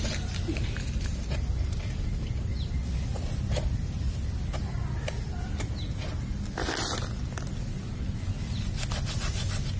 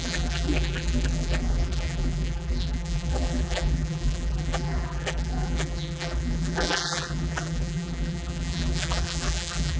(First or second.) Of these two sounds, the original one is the first